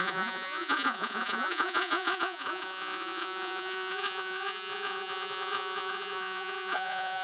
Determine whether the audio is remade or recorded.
remade